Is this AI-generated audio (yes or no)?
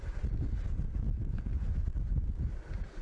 no